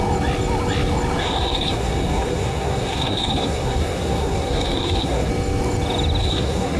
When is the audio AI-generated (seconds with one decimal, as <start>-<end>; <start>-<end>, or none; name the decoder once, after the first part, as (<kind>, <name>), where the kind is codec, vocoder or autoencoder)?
1.2-5.3 (codec, SNAC); 6.2-6.8